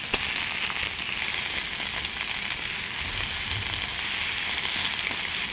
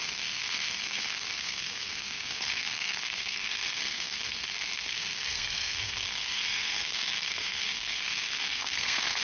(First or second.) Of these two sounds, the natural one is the first